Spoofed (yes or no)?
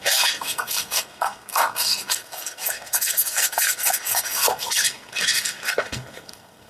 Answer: yes